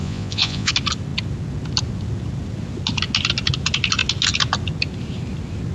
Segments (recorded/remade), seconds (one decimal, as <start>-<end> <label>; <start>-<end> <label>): 0.0-0.7 remade; 0.7-5.7 recorded